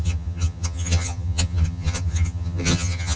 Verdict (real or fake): fake